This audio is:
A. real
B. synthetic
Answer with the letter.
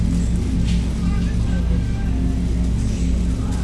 A